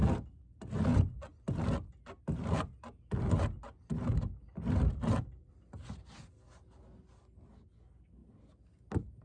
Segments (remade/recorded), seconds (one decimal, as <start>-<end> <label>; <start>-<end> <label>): 0.0-9.2 recorded